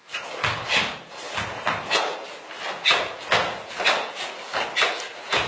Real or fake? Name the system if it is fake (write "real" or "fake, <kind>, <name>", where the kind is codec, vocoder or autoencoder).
real